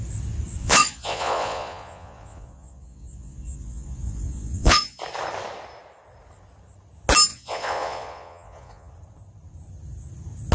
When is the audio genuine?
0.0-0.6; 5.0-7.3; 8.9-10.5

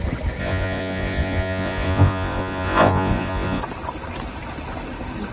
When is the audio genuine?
0.0-0.4; 3.6-5.3

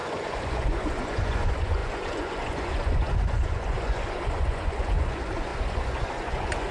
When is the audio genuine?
none

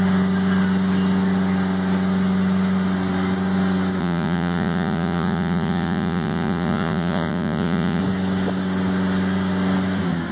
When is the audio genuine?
0.0-4.0; 8.0-10.3

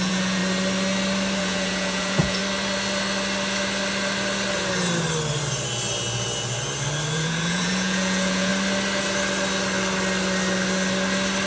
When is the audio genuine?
0.4-1.4; 2.4-7.1; 8.5-11.5

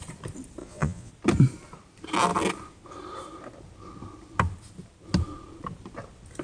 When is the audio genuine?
0.0-0.6; 1.1-6.4

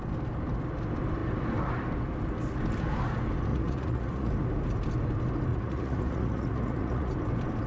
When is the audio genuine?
0.0-3.5; 4.3-5.5; 7.1-7.7

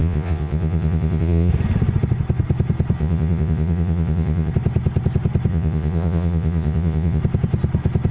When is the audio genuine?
1.5-3.0; 4.5-5.5; 7.2-8.1